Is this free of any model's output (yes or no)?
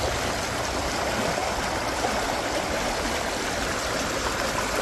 yes